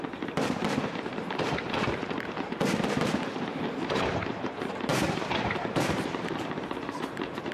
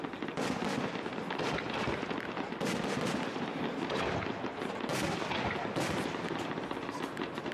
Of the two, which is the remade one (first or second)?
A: first